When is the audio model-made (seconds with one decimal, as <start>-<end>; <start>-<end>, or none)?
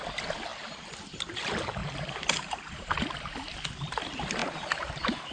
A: 0.5-1.4; 1.8-2.9; 4.4-5.3